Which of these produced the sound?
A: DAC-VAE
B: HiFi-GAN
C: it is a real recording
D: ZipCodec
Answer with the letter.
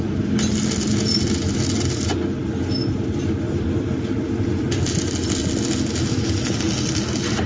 C